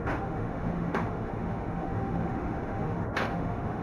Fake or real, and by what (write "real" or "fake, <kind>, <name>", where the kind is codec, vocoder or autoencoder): fake, autoencoder, DAC-VAE